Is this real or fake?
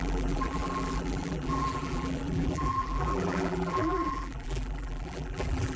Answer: fake